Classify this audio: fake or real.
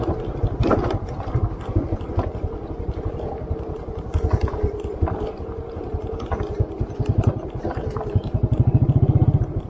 real